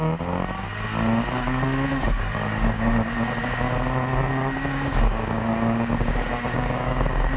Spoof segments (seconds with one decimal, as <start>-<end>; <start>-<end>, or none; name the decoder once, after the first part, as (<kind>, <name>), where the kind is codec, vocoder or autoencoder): 1.9-3.1 (codec, DAC); 4.3-7.4